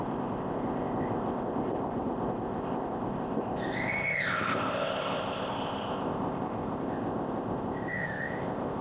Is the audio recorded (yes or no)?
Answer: no